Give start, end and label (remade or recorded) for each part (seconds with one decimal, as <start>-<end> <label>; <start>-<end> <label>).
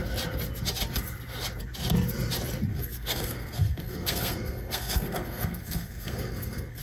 0.0-2.7 recorded; 2.7-6.8 remade